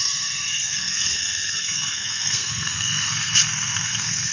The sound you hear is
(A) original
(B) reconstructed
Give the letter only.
B